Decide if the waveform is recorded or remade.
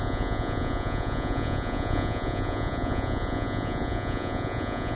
remade